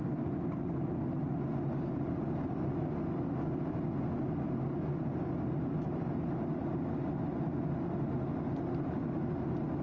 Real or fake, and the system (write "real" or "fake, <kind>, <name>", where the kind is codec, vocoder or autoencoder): real